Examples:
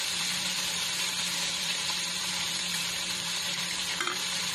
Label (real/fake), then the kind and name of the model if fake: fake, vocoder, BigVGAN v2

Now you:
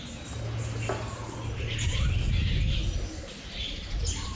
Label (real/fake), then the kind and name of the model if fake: real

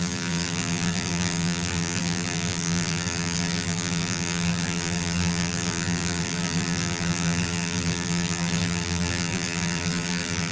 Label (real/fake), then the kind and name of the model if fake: fake, vocoder, BigVGAN v2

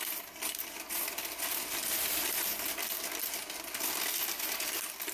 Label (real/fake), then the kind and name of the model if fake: fake, vocoder, BigVGAN v2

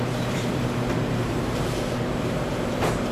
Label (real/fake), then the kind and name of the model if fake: fake, vocoder, BigVGAN v2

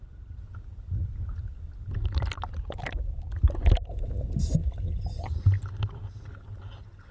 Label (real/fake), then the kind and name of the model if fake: real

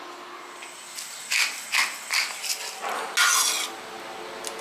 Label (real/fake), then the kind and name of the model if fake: real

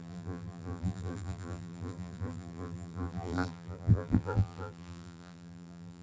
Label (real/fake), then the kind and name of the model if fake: fake, vocoder, BigVGAN v2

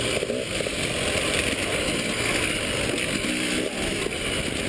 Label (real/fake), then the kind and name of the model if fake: real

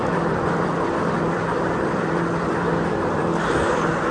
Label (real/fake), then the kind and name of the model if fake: fake, vocoder, BigVGAN v2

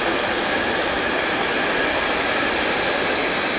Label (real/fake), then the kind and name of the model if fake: real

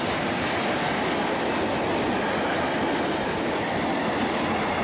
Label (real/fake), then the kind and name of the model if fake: real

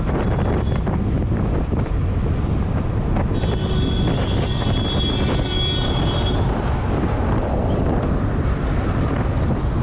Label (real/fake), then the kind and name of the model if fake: fake, vocoder, BigVGAN v2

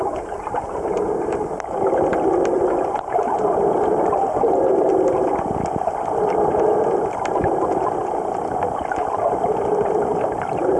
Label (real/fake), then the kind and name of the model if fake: real